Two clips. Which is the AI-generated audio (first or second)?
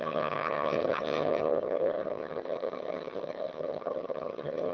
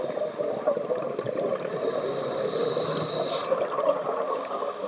first